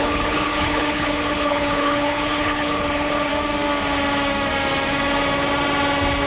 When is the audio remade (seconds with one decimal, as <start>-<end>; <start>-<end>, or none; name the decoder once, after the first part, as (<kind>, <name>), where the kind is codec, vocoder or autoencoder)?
0.0-3.3 (codec, HILCodec)